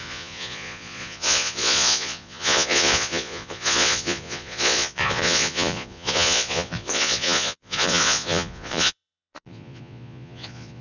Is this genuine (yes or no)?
no